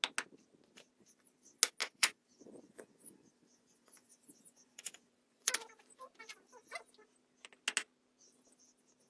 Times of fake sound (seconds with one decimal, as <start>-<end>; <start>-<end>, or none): 1.8-5.5